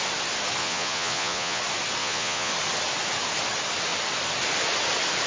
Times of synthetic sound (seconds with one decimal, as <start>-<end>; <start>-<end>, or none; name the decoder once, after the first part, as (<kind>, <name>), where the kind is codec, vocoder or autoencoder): 0.6-1.6 (vocoder, Vocos); 2.0-2.5